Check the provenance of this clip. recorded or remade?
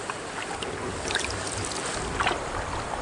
recorded